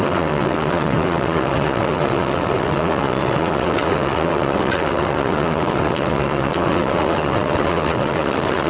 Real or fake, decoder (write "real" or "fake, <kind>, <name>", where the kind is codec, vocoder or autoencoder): fake, vocoder, WaveNeXt